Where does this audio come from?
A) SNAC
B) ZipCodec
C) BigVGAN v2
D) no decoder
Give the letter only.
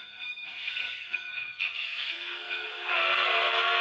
A